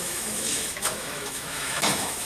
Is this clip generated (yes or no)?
yes